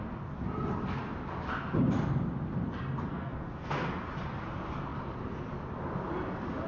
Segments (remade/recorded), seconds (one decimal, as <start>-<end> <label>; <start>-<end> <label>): 0.0-3.1 recorded; 3.1-3.9 remade; 3.9-6.7 recorded